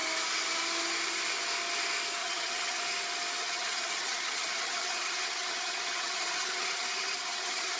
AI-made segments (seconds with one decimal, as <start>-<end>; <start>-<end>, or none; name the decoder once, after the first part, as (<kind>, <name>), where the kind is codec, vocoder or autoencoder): 2.2-2.8 (vocoder, HiFi-GAN); 3.4-7.8